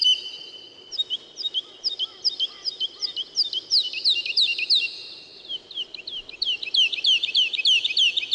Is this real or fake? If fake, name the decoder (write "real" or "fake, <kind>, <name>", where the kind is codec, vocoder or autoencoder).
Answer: fake, vocoder, BigVGAN v2